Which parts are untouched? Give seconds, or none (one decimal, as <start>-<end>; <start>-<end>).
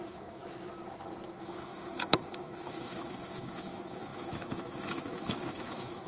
0.4-1.4